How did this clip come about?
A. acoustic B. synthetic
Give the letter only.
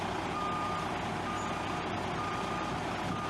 A